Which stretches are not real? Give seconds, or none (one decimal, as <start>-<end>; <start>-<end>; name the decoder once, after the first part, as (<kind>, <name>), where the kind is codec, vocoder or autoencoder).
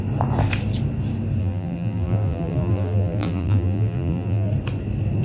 1.4-4.5 (vocoder, BigVGAN v2)